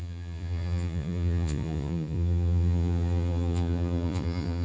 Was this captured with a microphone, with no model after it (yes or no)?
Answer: no